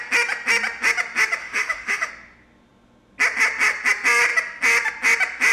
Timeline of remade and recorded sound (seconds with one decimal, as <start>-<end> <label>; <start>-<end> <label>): 0.0-1.4 recorded; 1.4-2.1 remade; 2.1-5.5 recorded